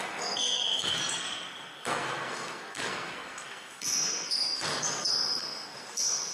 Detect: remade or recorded remade